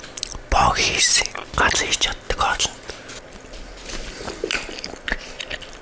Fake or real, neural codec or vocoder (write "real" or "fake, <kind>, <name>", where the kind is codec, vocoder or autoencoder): real